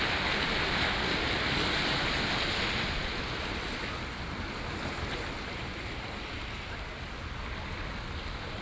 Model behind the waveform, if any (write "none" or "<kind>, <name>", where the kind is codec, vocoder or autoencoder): none